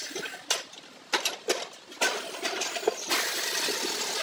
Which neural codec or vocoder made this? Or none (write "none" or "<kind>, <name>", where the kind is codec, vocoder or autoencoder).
none